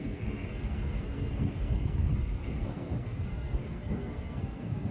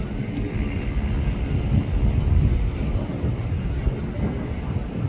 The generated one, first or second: first